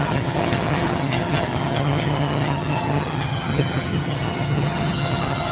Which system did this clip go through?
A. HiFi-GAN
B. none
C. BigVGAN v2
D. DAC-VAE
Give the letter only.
A